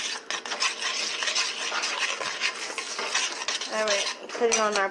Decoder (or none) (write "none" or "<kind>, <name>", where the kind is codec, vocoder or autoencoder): none